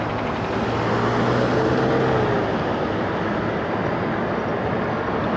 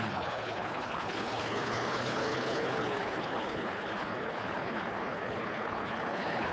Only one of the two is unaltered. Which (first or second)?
first